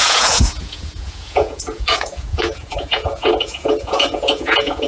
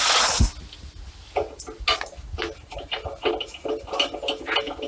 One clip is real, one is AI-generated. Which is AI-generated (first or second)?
first